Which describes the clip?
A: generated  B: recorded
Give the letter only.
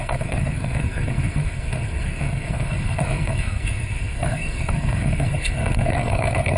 A